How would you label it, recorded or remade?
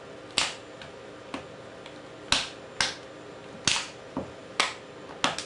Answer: recorded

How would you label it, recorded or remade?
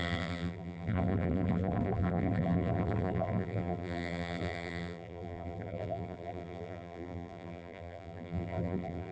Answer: remade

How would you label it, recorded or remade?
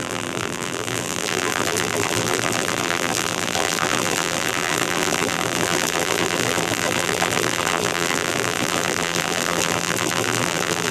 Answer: remade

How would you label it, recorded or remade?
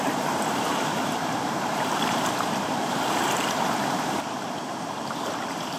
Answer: remade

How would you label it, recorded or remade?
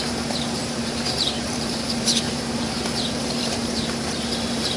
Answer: remade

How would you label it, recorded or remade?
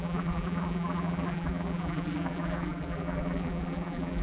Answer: remade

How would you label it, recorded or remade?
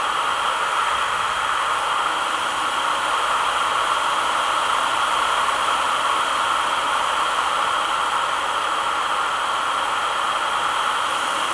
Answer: recorded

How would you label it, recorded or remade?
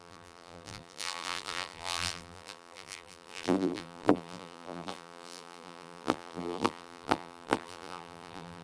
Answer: remade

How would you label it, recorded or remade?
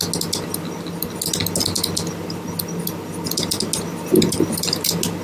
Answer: recorded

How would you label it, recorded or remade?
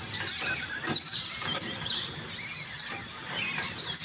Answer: remade